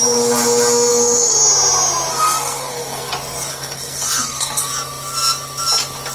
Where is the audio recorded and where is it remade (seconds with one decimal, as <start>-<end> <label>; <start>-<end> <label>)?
0.0-0.9 recorded; 0.9-1.4 remade; 1.4-2.1 recorded; 2.1-3.1 remade; 3.1-3.5 recorded; 3.5-4.7 remade; 4.7-6.1 recorded